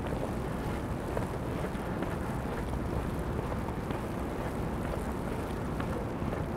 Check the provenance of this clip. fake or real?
real